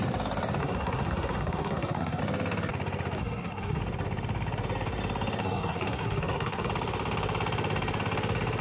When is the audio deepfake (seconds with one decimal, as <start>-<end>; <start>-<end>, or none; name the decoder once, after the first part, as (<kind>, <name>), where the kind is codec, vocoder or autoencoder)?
0.6-2.2 (codec, SNAC); 3.2-3.8; 5.4-6.7